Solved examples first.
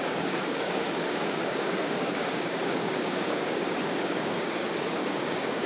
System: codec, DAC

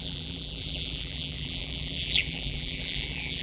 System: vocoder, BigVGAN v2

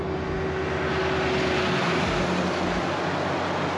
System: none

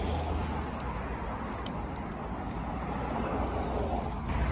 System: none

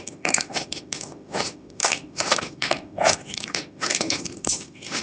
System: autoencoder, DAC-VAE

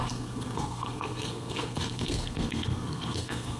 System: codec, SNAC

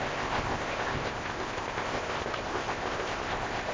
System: codec, ZipCodec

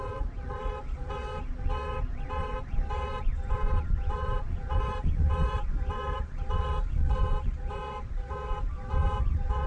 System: vocoder, Vocos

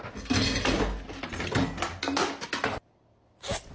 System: none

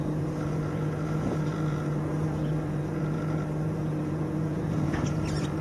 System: vocoder, Vocos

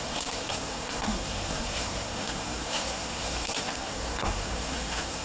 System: codec, SNAC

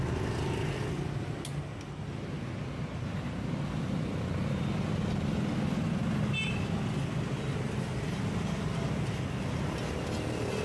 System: none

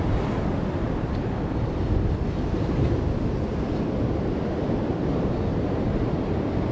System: vocoder, BigVGAN v2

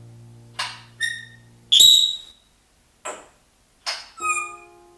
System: none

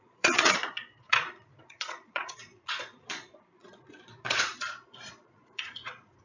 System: vocoder, Vocos